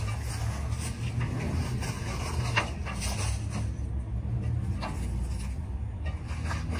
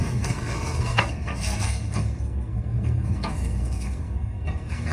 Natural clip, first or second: first